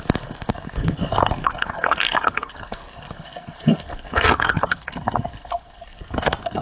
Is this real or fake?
fake